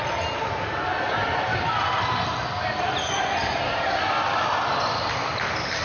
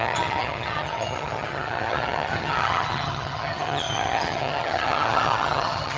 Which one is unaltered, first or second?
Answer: first